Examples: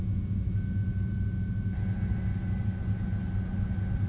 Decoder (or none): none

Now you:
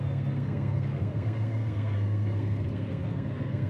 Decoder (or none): codec, SNAC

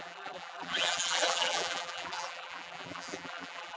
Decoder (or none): vocoder, BigVGAN v2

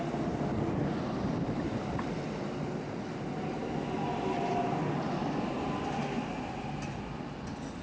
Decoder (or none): none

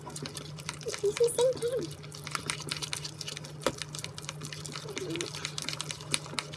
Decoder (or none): none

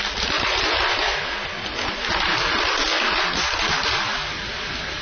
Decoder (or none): none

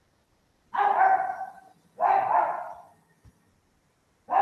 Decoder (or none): none